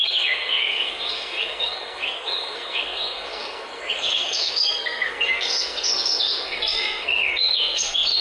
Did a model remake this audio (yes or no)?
yes